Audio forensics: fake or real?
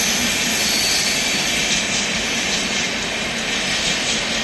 real